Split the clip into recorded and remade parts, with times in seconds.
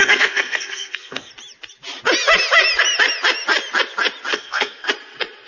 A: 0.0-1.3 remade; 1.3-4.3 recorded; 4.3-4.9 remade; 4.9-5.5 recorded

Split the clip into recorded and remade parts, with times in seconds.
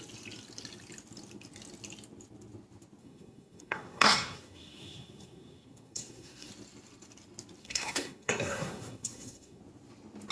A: 0.0-3.0 recorded; 3.0-6.5 remade; 6.5-7.6 recorded; 7.6-9.6 remade; 9.6-10.3 recorded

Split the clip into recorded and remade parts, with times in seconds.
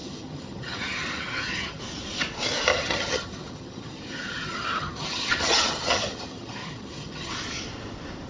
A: 0.0-1.8 remade; 1.8-2.7 recorded; 2.7-7.3 remade; 7.3-8.3 recorded